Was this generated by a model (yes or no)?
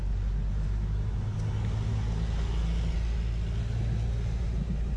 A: no